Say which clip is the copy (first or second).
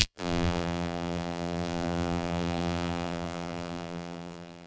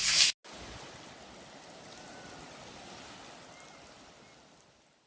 first